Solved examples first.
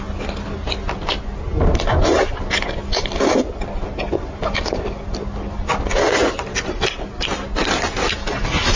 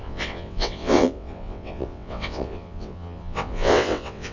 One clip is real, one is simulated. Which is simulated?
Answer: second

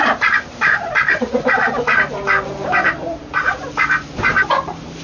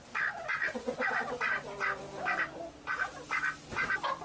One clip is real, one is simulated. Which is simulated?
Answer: first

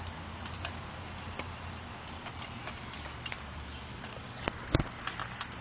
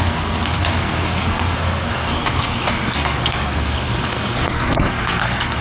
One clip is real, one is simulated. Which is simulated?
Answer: second